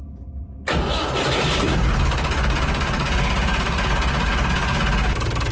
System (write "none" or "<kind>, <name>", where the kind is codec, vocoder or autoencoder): none